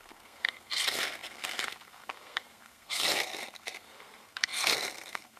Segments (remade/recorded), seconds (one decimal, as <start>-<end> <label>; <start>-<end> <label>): 0.0-5.4 remade